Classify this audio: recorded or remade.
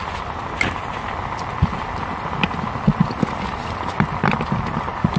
recorded